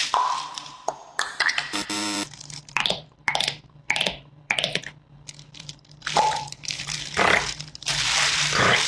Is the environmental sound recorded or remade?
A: remade